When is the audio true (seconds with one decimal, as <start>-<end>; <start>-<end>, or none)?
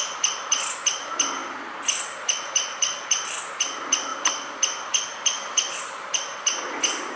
0.0-7.2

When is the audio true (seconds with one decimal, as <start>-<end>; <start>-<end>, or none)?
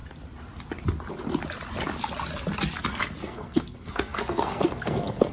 0.0-3.2